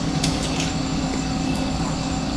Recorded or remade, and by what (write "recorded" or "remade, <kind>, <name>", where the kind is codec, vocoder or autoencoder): remade, codec, DAC